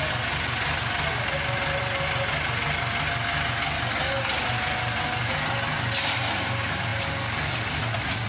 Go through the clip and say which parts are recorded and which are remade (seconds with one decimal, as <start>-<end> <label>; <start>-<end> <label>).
0.0-8.3 recorded